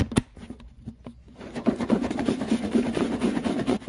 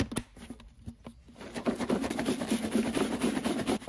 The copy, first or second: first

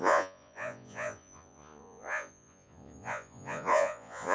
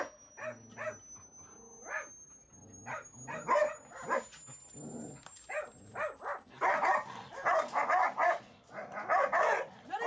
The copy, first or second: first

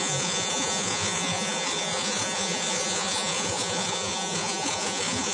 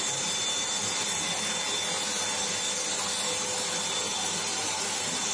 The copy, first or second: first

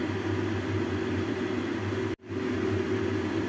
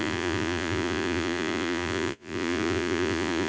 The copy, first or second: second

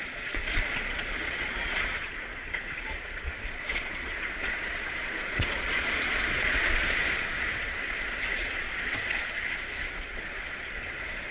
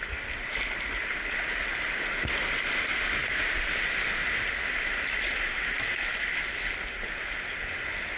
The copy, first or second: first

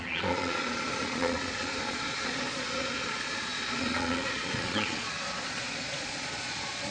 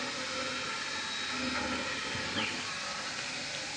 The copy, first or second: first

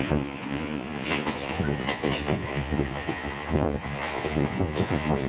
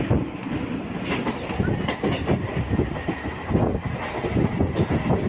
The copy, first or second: first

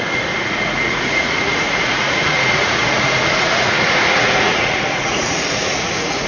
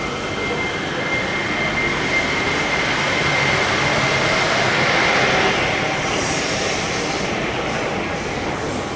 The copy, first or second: first